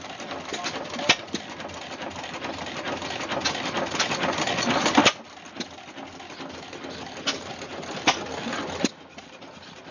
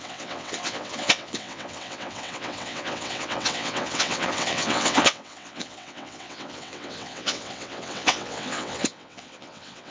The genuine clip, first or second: first